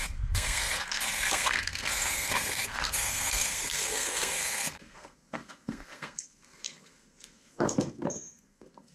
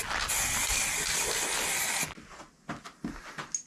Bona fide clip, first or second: second